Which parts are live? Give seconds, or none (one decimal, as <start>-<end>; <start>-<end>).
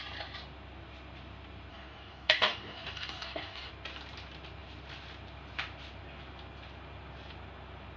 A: 0.0-1.7; 3.7-8.0